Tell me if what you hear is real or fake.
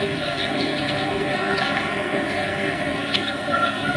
fake